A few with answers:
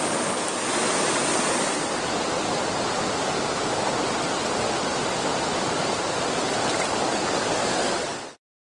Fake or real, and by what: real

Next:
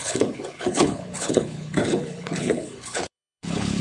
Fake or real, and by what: fake, codec, HILCodec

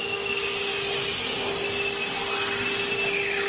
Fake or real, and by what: real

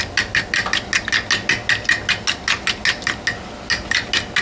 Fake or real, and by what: real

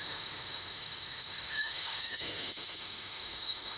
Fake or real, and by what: fake, autoencoder, DAC-VAE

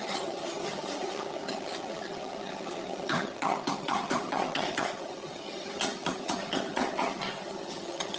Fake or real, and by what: fake, vocoder, HiFi-GAN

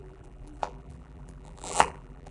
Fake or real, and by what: fake, vocoder, BigVGAN v2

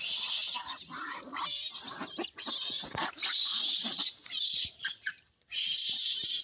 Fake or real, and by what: real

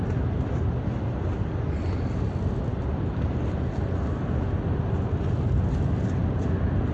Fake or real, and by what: real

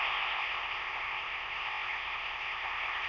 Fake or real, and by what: fake, codec, ZipCodec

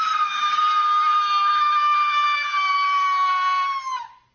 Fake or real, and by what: real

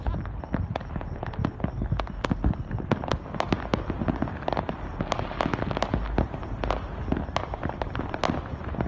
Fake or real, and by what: real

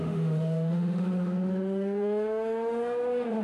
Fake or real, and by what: fake, autoencoder, DAC-VAE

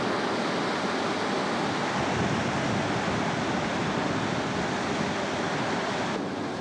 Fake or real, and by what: real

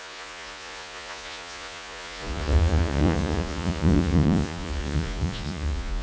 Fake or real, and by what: fake, vocoder, Vocos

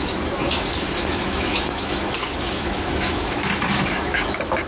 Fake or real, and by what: fake, autoencoder, DAC-VAE